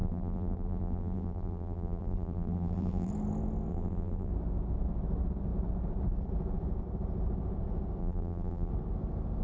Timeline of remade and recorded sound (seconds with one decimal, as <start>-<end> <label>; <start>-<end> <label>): 0.0-3.1 remade; 3.1-3.7 recorded; 3.7-4.3 remade; 4.3-8.0 recorded; 8.0-8.7 remade; 8.7-9.4 recorded